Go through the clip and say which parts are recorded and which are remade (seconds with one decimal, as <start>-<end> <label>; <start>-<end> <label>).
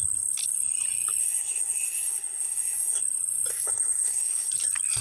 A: 0.0-1.2 recorded; 1.2-3.0 remade; 3.0-3.5 recorded; 3.5-4.5 remade; 4.5-5.0 recorded